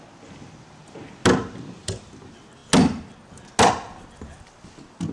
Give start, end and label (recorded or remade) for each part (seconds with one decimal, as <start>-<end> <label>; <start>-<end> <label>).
0.0-5.1 recorded